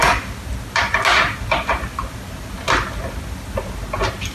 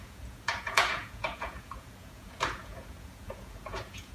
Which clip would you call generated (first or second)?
second